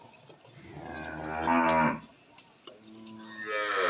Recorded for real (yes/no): yes